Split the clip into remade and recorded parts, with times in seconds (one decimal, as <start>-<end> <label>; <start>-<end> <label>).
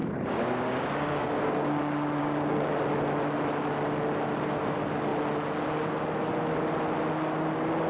0.0-1.8 remade; 1.8-2.2 recorded; 2.2-2.7 remade; 2.7-7.9 recorded